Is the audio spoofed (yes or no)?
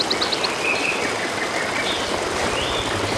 no